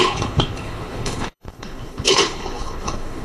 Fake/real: fake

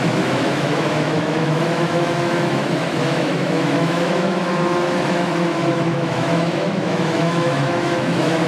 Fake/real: fake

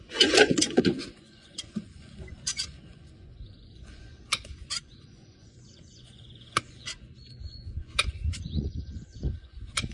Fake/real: fake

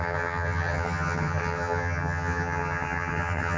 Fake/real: fake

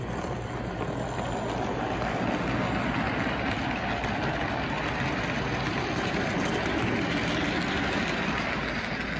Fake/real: real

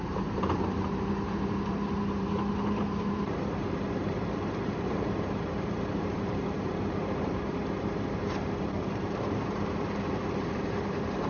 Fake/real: fake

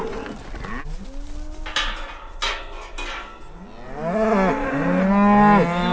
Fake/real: real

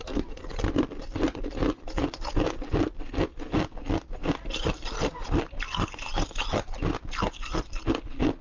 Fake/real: real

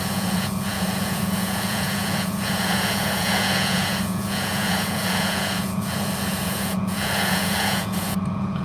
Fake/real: fake